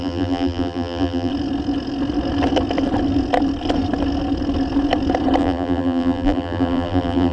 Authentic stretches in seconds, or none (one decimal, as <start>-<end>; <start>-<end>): 1.3-5.4